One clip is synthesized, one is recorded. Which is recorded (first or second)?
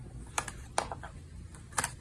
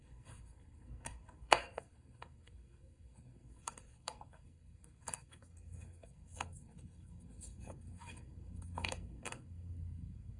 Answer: first